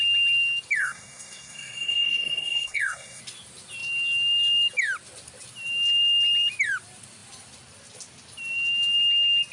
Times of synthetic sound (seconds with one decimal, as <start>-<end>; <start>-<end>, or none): 0.8-3.2

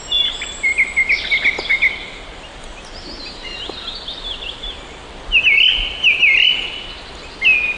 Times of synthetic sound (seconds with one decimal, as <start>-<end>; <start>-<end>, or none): none